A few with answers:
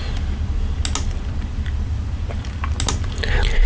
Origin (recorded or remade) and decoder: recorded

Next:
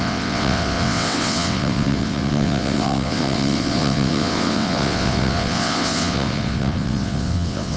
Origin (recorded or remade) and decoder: remade, vocoder, WaveNeXt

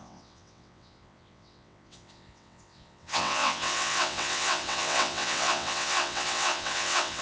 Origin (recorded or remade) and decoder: remade, vocoder, WaveNeXt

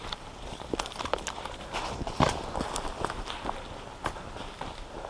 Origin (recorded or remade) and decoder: recorded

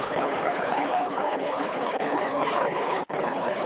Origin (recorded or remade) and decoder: remade, codec, HILCodec